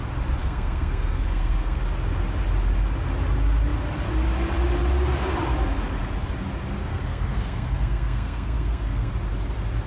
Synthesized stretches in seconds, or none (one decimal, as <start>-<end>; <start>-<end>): 0.4-1.8; 6.9-9.1